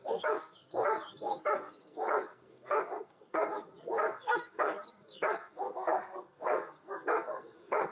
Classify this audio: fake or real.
fake